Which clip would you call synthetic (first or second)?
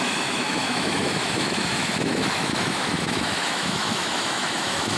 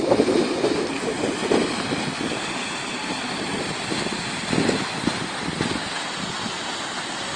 first